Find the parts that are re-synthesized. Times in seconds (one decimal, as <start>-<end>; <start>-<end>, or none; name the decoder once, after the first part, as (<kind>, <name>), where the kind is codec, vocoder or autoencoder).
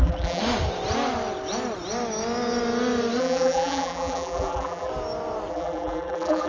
0.0-0.4 (vocoder, BigVGAN v2); 3.2-4.9; 5.5-6.5